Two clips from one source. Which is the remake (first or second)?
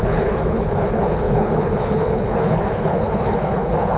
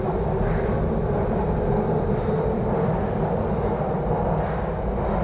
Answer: first